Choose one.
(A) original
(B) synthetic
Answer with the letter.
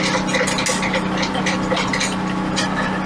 A